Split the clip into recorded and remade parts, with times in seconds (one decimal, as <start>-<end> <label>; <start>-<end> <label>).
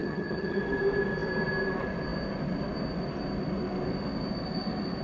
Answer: 0.0-0.6 remade; 0.6-5.0 recorded